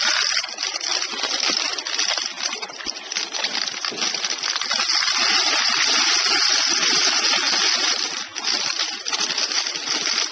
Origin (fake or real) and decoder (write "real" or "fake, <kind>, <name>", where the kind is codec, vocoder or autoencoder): real